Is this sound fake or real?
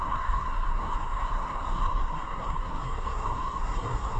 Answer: fake